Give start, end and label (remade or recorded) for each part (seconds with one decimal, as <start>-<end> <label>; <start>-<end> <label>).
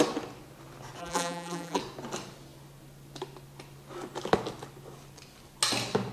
0.0-1.0 recorded; 1.0-1.8 remade; 1.8-6.1 recorded